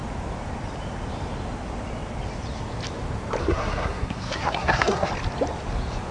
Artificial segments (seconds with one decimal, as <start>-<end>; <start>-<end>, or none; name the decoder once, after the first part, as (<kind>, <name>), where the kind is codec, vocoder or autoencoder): 3.4-5.1 (codec, SNAC)